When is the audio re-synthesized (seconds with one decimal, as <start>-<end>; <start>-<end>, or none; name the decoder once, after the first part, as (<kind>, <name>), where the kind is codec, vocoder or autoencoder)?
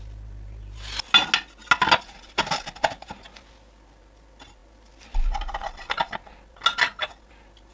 none